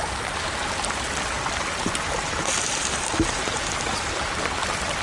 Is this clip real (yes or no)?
yes